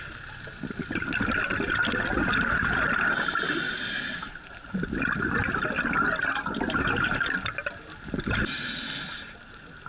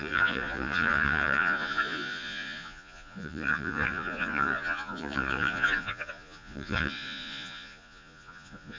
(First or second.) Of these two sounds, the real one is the first